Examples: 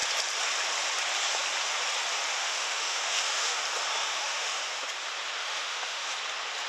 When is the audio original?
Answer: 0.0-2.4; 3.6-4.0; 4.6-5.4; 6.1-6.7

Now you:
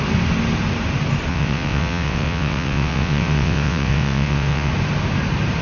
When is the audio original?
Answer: 0.0-1.3; 4.7-5.6

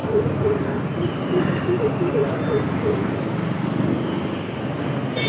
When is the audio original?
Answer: 0.0-5.3

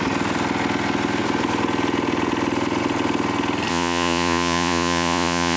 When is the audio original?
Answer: 0.0-3.7